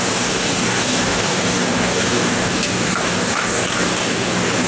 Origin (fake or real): fake